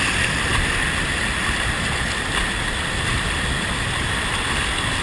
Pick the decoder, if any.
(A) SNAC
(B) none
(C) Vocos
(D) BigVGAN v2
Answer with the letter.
B